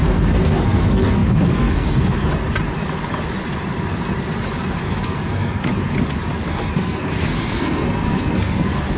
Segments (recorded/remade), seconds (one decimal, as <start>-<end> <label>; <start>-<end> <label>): 0.0-2.3 remade; 2.3-4.9 recorded; 4.9-5.7 remade; 5.7-6.5 recorded; 6.5-9.0 remade